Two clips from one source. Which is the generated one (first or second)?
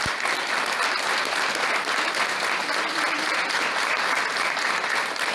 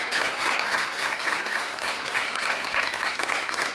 second